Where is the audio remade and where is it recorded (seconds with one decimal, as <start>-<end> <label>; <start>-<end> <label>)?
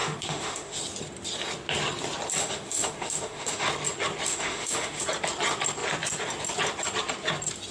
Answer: 0.0-0.8 remade; 0.8-2.4 recorded; 2.4-3.7 remade; 3.7-4.3 recorded; 4.3-5.0 remade; 5.0-7.7 recorded